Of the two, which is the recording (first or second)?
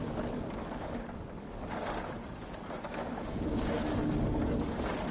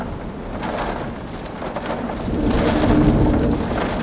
second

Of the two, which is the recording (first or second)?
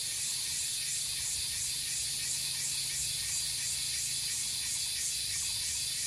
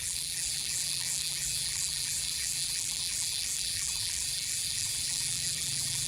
first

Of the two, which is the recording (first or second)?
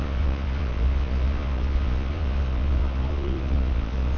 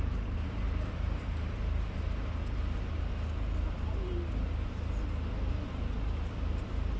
second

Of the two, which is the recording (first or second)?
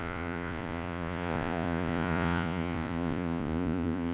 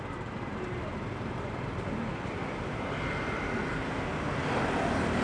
second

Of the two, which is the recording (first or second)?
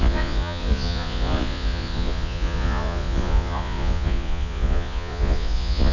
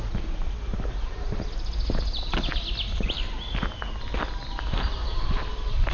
second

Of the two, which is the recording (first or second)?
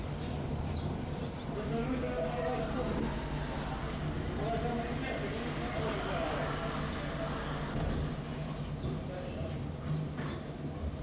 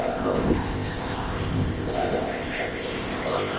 first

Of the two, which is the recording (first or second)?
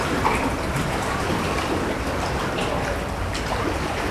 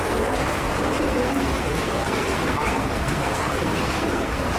first